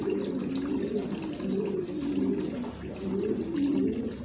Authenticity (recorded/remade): recorded